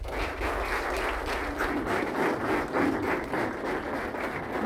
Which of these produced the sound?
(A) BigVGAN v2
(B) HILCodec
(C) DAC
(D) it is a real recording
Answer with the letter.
D